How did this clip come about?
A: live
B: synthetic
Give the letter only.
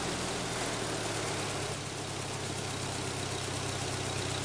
A